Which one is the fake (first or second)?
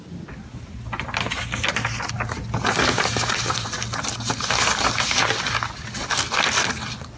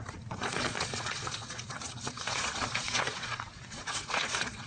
second